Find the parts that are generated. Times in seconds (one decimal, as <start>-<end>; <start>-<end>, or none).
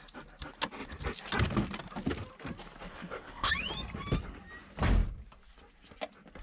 2.9-3.5